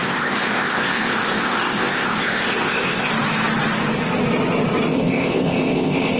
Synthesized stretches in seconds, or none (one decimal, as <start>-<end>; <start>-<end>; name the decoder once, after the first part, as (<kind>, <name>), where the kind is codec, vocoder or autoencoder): 0.0-3.1 (codec, ZipCodec); 4.9-6.2